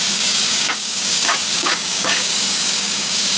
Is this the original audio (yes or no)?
no